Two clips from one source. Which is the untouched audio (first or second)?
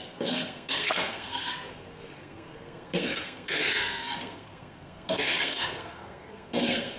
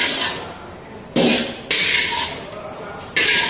second